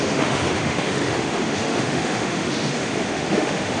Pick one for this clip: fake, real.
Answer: fake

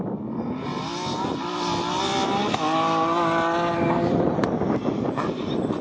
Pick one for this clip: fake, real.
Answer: real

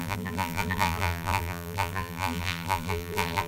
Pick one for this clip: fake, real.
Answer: fake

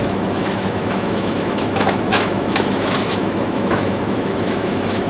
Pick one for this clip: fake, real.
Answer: fake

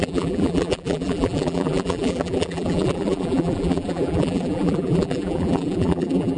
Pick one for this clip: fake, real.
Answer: fake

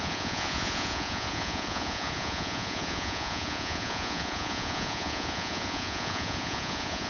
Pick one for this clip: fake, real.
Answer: fake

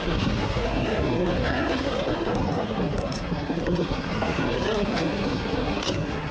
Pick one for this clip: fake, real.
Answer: fake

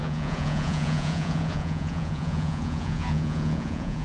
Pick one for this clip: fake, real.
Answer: fake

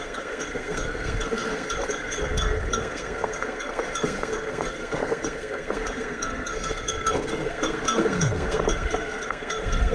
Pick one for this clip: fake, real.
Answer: fake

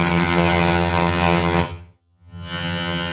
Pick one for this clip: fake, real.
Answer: fake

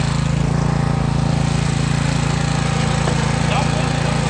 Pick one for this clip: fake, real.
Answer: real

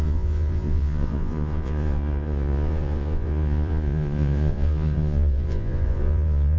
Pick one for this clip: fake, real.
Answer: fake